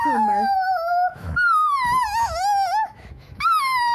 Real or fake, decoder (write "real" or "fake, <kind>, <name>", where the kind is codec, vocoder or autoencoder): fake, autoencoder, DAC-VAE